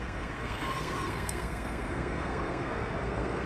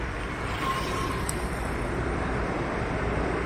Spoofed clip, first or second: first